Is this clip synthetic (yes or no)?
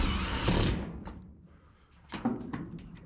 yes